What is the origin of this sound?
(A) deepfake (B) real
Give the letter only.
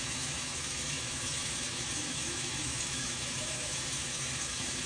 A